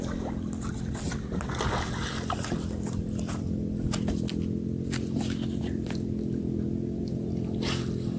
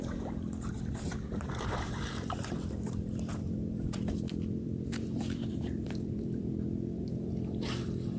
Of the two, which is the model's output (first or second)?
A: second